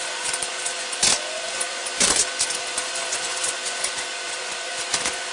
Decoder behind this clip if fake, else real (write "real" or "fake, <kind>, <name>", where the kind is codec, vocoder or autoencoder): fake, vocoder, Vocos